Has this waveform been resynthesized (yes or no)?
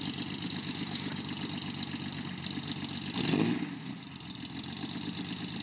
no